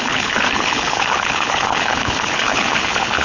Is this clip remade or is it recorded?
remade